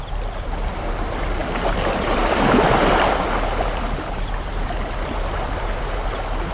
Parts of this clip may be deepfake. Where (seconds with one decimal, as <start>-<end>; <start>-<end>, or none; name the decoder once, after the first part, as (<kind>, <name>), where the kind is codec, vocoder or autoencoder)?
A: 1.4-4.5 (vocoder, BigVGAN v2)